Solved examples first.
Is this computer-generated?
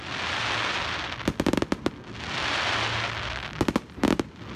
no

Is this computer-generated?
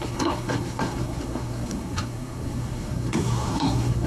yes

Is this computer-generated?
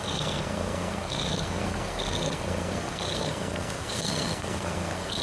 yes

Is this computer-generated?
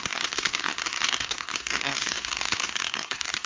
yes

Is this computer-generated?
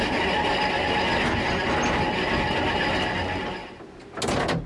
no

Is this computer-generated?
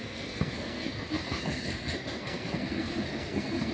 yes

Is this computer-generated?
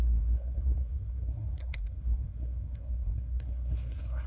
yes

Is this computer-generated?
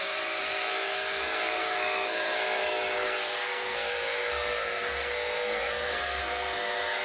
yes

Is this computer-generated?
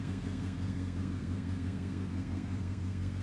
yes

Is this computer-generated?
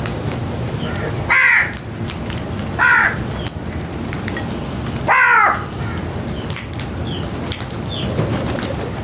no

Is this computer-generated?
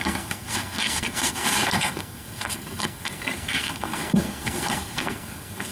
yes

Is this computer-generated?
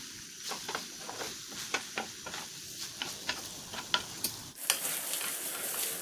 no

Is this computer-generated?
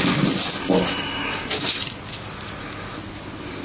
no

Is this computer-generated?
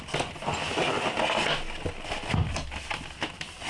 no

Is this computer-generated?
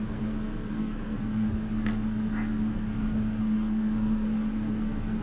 yes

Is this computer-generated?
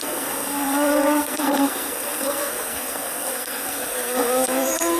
yes